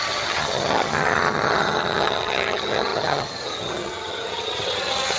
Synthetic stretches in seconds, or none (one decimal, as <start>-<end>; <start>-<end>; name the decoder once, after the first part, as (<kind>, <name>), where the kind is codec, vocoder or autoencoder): 0.0-5.2 (vocoder, HiFi-GAN)